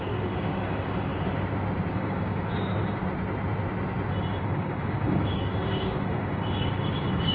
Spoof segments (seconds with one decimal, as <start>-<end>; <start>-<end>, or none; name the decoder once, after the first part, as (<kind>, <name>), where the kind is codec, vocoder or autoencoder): 0.0-1.1 (codec, DAC); 1.9-3.0; 4.4-7.3